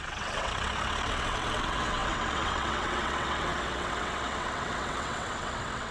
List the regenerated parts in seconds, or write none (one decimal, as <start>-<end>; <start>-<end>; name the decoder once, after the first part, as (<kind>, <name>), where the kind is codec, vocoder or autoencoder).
0.0-5.9 (vocoder, WaveNeXt)